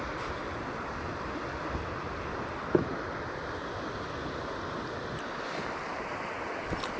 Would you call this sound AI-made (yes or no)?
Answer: no